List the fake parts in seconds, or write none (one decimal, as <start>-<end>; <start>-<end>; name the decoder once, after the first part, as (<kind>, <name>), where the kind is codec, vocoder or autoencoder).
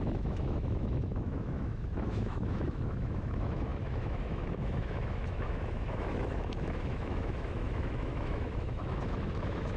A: 0.0-9.8 (autoencoder, DAC-VAE)